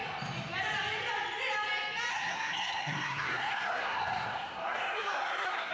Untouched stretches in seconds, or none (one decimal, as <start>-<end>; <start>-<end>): 0.0-2.1